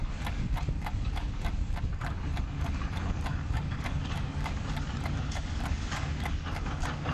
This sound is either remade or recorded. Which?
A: remade